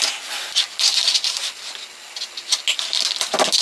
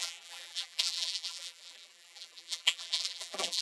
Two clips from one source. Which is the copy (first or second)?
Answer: second